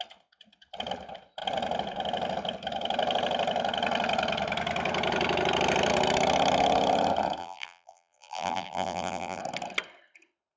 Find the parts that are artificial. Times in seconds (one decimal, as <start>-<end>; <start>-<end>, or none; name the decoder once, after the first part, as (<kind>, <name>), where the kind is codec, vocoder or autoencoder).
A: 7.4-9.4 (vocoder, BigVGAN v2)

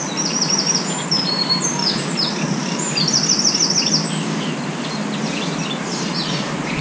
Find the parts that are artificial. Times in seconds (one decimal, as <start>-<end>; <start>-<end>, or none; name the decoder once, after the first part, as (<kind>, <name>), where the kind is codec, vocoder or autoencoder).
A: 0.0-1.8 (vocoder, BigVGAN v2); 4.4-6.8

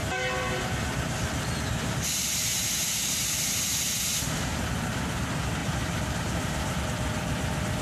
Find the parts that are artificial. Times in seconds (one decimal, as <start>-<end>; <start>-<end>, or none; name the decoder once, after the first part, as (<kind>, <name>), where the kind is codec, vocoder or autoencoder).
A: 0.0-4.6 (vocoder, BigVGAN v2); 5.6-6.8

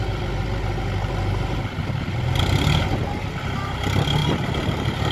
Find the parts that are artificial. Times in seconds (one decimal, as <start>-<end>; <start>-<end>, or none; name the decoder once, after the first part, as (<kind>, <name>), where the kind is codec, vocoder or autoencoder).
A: 4.2-5.1 (vocoder, BigVGAN v2)